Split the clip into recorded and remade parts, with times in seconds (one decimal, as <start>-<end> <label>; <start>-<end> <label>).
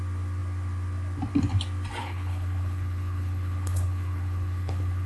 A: 0.0-2.0 recorded; 2.0-5.1 remade